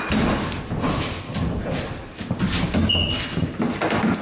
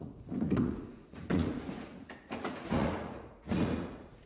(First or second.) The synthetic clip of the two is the second